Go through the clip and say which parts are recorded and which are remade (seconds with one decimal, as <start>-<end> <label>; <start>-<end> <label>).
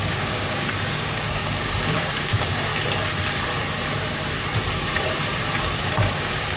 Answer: 0.0-2.7 remade; 2.7-5.6 recorded; 5.6-6.6 remade